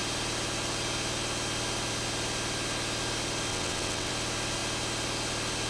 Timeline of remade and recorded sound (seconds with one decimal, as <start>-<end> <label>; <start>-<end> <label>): 0.0-3.5 recorded; 3.5-4.1 remade; 4.1-5.7 recorded